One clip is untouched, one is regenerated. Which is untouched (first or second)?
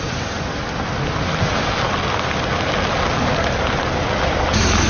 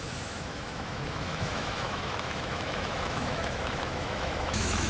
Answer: first